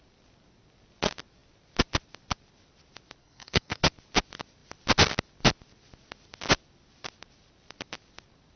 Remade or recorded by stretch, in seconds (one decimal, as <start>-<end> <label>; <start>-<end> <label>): 0.0-3.2 recorded; 3.2-3.8 remade; 3.8-8.6 recorded